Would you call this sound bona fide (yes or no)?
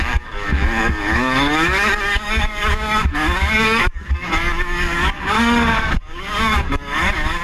no